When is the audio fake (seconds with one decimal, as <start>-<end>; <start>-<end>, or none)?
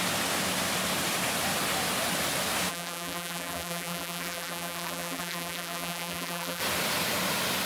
2.7-6.6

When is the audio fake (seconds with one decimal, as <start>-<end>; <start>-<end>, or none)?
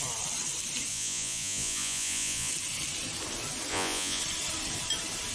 0.9-2.5; 3.7-4.2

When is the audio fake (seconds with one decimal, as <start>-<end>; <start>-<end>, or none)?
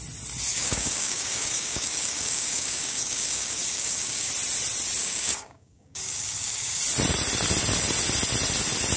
0.5-4.3; 5.0-6.8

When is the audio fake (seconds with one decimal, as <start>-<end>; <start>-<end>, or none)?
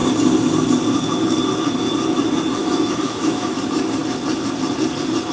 2.6-3.5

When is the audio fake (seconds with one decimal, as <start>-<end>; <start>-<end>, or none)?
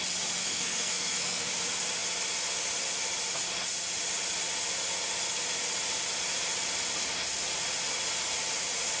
0.4-1.5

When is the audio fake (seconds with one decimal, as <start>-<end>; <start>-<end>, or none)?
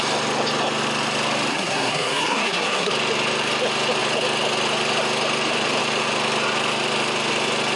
1.5-2.9